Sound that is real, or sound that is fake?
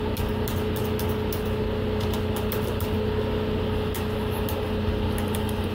real